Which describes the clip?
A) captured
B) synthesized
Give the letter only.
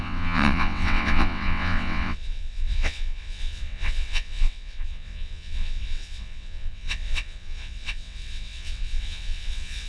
B